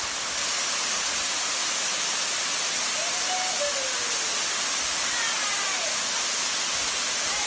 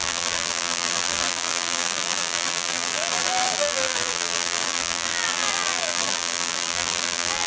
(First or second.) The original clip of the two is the first